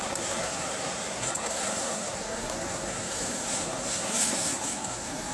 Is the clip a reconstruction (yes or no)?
yes